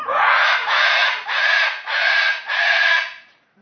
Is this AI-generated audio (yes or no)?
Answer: yes